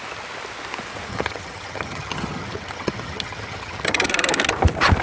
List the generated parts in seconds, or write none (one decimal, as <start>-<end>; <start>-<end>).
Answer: 1.1-4.1